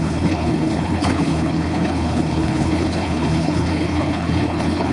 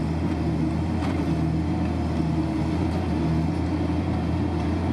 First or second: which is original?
second